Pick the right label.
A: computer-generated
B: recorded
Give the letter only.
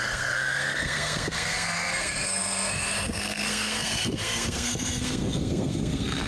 A